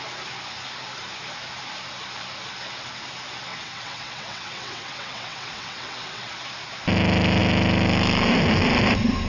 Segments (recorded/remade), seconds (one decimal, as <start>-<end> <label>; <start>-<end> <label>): 0.0-3.5 recorded; 3.5-6.3 remade; 6.3-9.3 recorded